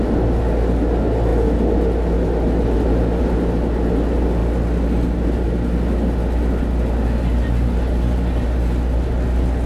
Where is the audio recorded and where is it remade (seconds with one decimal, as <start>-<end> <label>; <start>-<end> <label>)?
0.0-9.7 recorded